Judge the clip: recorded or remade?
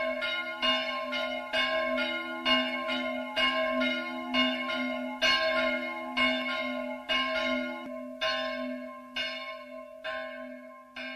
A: recorded